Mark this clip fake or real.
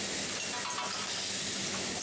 real